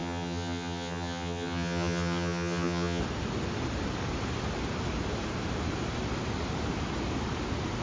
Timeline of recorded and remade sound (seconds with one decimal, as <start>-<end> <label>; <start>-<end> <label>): 0.0-3.0 remade; 3.0-7.8 recorded